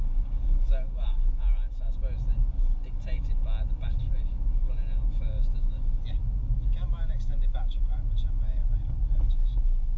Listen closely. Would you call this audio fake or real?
real